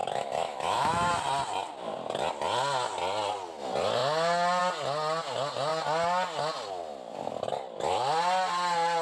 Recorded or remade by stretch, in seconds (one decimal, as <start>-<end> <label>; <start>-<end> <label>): 0.0-1.1 remade; 1.1-9.0 recorded